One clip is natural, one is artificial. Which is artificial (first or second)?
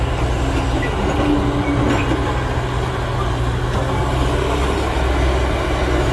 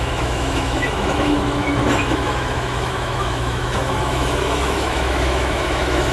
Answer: second